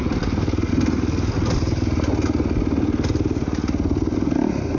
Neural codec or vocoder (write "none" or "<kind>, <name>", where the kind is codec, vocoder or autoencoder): none